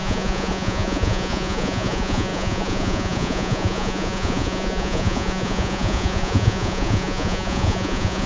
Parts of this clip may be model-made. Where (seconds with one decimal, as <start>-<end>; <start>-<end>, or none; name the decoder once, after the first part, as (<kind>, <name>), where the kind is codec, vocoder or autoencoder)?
0.0-8.3 (vocoder, Vocos)